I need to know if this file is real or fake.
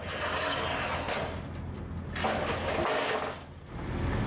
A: real